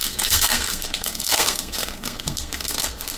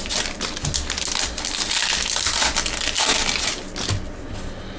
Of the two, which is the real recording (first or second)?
second